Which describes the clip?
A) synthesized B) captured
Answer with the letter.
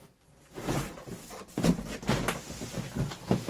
B